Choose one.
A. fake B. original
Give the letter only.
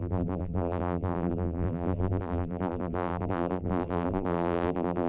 A